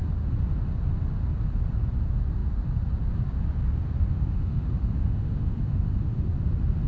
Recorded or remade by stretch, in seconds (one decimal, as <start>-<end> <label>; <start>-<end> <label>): 0.0-4.1 recorded; 4.1-6.3 remade; 6.3-6.9 recorded